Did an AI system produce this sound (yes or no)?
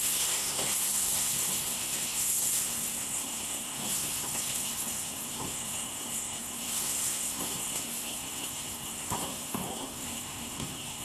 yes